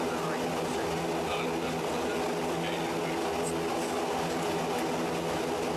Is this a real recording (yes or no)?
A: yes